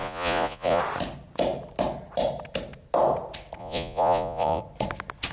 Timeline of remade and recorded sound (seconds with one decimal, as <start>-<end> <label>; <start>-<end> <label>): 0.0-0.8 remade; 0.8-3.6 recorded; 3.6-4.6 remade; 4.6-5.3 recorded